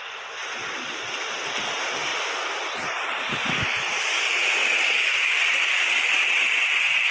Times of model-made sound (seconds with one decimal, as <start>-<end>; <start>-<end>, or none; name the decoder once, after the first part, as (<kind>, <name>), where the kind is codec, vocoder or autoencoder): 4.6-7.1 (vocoder, BigVGAN v2)